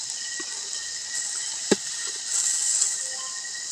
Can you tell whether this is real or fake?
real